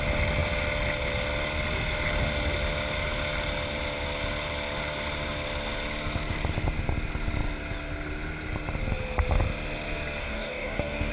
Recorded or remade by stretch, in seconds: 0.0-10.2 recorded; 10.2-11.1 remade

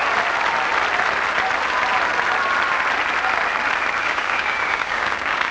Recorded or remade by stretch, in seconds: 0.0-4.0 recorded; 4.0-5.5 remade

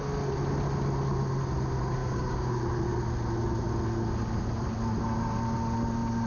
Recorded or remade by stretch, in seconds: 0.0-2.0 recorded; 2.0-2.6 remade; 2.6-6.3 recorded

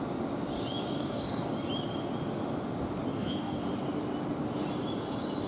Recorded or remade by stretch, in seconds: 0.0-1.0 recorded; 1.0-1.5 remade; 1.5-3.1 recorded; 3.1-3.6 remade; 3.6-5.5 recorded

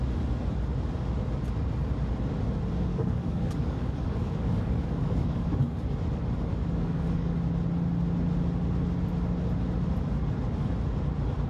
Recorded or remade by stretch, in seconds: 0.0-2.9 recorded; 2.9-5.8 remade; 5.8-6.5 recorded; 6.5-7.4 remade; 7.4-11.5 recorded

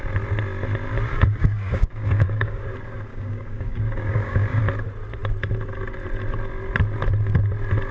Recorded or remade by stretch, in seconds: 0.0-1.1 recorded; 1.1-2.6 remade; 2.6-3.1 recorded; 3.1-4.6 remade; 4.6-7.9 recorded

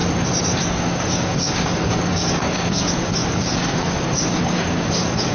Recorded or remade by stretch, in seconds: 0.0-0.6 recorded; 0.6-5.3 remade

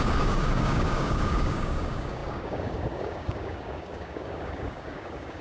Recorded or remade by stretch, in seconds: 0.0-5.4 remade